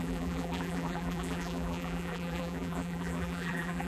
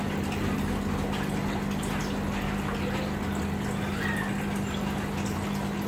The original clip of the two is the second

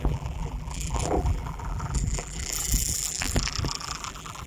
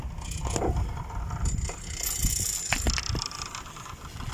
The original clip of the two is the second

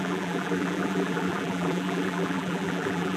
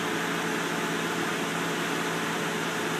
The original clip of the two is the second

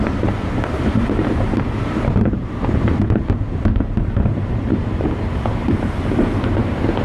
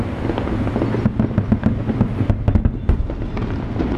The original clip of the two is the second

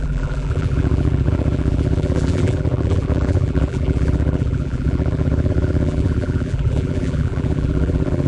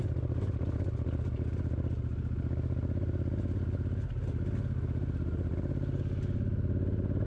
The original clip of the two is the second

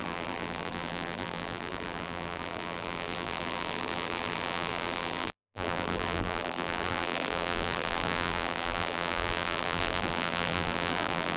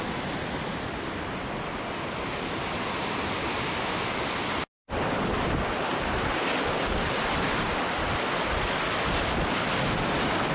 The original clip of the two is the second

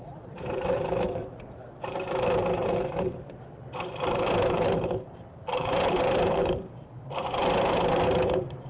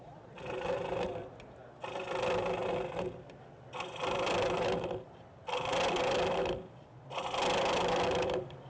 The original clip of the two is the second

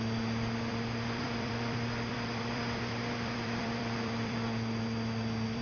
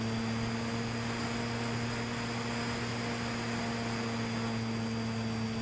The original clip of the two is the second